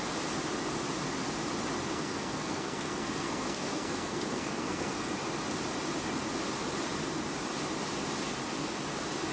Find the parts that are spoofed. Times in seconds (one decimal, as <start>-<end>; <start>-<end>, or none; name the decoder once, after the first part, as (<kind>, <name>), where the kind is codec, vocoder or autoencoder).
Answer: 1.9-5.1 (codec, SNAC)